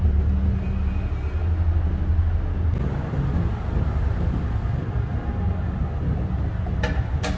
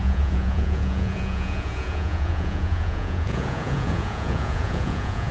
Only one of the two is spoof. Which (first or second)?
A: second